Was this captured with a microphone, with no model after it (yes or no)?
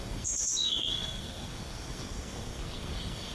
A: no